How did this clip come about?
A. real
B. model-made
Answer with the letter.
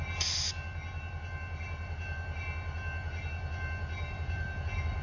A